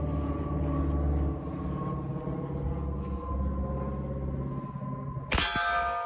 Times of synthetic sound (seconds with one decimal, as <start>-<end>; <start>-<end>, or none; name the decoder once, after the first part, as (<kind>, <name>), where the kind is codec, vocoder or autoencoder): none